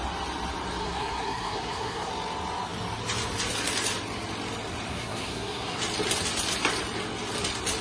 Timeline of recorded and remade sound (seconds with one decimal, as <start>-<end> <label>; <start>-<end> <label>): 0.0-0.8 recorded; 0.8-2.1 remade; 2.1-4.9 recorded; 4.9-5.8 remade; 5.8-7.8 recorded